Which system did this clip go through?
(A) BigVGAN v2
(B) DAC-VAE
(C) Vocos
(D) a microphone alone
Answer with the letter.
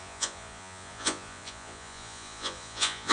C